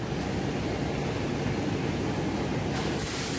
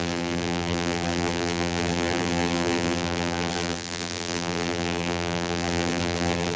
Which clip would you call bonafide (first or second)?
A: first